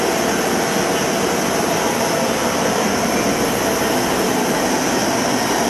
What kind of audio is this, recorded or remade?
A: recorded